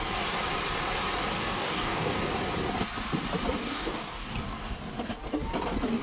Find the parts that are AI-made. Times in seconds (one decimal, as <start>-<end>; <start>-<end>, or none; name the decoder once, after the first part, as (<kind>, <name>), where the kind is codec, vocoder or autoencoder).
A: 1.4-2.2 (codec, DAC); 3.6-4.7